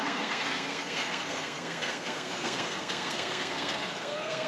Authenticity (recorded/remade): remade